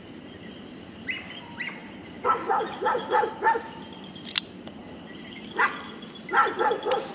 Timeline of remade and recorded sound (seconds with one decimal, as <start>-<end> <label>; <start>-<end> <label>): 0.0-1.8 recorded; 1.8-3.3 remade; 3.3-7.1 recorded

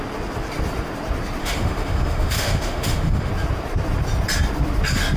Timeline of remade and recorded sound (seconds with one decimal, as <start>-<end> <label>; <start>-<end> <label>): 0.0-1.4 recorded; 1.4-3.3 remade; 3.3-5.2 recorded

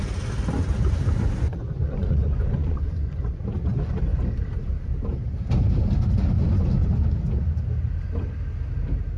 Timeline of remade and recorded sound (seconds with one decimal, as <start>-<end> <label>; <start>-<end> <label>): 0.0-1.4 recorded; 1.4-3.4 remade; 3.4-9.2 recorded

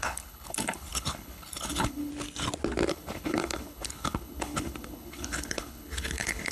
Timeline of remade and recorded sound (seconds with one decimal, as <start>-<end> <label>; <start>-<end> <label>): 0.0-2.1 remade; 2.1-2.9 recorded; 2.9-6.5 remade